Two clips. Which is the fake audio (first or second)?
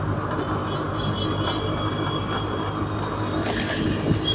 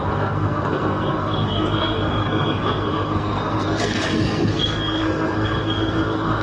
second